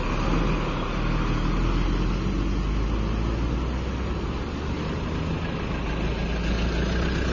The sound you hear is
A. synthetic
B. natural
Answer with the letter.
B